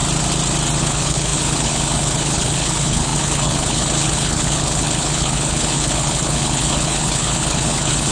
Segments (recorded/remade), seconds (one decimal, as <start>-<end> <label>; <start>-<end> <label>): 0.0-0.8 recorded; 0.8-8.1 remade